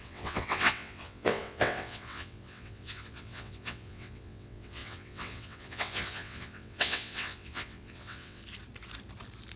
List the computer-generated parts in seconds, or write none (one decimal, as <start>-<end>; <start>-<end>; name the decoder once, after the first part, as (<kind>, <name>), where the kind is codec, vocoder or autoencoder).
0.0-8.4 (vocoder, WaveNeXt)